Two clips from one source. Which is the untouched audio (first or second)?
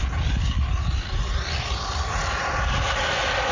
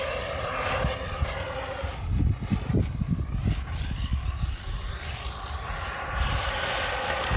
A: first